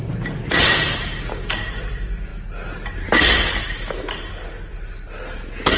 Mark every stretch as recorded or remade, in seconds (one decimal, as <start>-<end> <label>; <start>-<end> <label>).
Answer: 0.0-5.8 recorded